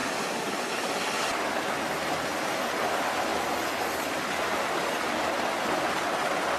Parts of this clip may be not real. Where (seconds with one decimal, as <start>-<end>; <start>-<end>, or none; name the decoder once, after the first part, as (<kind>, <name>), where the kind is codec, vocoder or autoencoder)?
none